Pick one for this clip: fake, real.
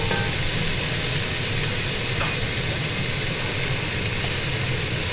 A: real